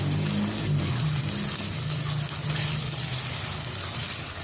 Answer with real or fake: real